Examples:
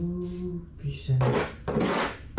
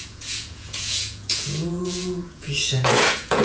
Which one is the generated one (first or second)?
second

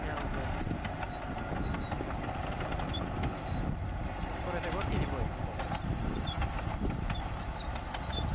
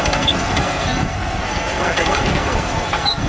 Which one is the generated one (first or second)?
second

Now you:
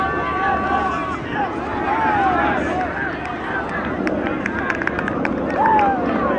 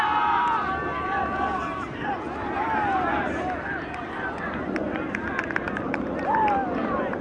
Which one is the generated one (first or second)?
second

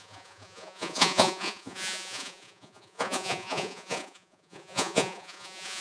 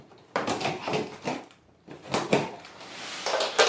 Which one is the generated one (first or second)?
first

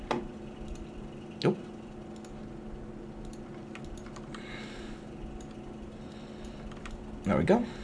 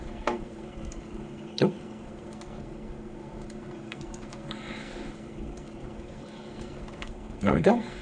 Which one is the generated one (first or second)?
second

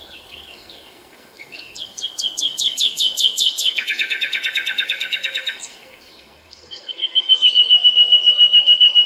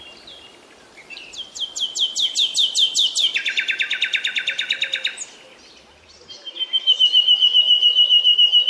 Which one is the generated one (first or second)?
first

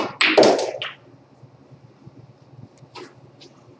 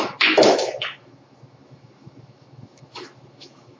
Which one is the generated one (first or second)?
second